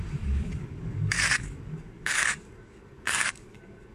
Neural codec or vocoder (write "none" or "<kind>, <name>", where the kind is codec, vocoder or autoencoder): codec, DAC